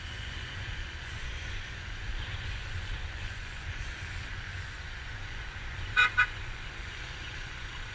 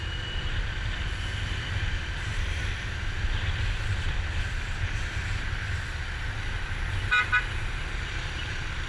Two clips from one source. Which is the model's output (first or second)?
first